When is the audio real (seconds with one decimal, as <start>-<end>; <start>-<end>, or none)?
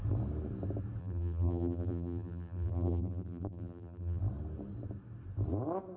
0.0-1.0; 4.2-6.0